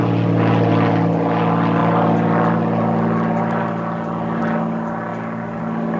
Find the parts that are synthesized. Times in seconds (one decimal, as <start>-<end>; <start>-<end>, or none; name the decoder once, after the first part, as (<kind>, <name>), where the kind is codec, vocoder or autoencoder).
none